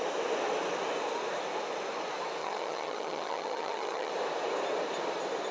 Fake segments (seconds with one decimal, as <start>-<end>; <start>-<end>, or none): 2.4-4.1